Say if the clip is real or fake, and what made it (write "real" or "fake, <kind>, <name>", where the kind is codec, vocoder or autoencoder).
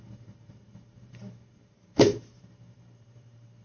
fake, vocoder, BigVGAN v2